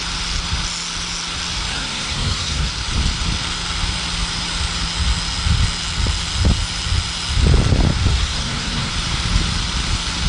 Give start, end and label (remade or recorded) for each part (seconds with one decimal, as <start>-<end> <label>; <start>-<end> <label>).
0.0-1.7 recorded; 1.7-2.7 remade; 2.7-8.1 recorded; 8.1-8.9 remade; 8.9-10.3 recorded